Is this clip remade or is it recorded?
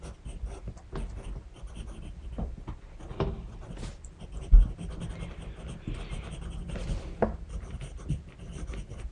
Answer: recorded